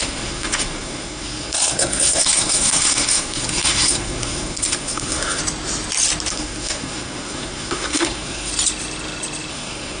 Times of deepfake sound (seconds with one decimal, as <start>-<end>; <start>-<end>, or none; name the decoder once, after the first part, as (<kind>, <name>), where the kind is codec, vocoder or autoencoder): 0.0-5.4 (codec, SNAC); 6.3-8.5; 9.5-10.0